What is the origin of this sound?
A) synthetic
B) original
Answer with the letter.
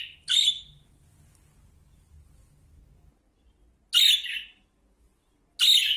B